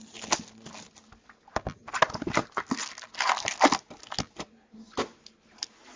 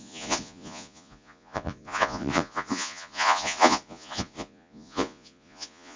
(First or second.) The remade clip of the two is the second